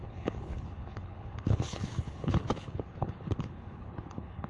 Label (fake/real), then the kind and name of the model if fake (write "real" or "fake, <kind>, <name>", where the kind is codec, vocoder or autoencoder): fake, codec, HILCodec